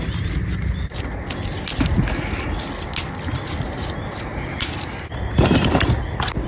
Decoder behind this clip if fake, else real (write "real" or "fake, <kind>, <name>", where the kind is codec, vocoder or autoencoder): real